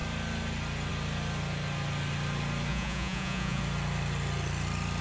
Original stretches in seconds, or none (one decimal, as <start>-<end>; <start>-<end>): 0.0-2.7; 3.6-5.0